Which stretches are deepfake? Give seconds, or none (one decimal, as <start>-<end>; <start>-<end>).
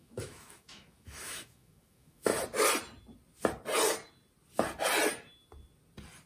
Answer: 0.0-2.3